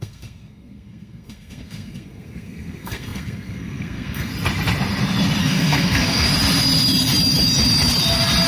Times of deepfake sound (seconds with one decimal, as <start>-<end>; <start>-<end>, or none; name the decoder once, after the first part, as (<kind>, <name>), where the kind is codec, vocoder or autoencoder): 0.0-4.3 (codec, SNAC); 5.4-6.3